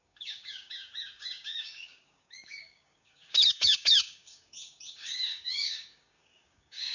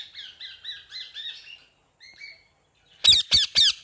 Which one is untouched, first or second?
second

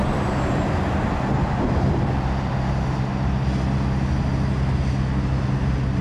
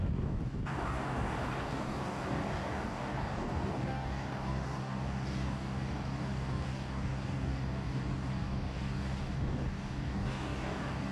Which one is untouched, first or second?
first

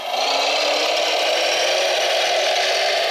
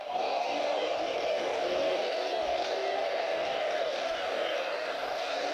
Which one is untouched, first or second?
first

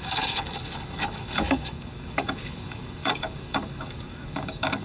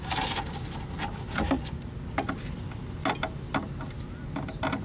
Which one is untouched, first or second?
second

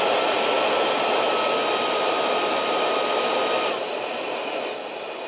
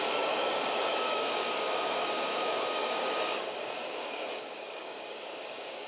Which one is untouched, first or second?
first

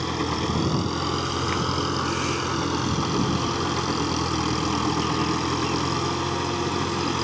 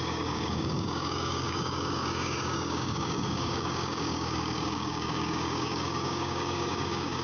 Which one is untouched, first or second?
first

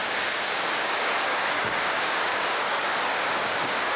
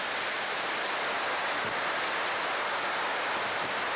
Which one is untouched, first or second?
second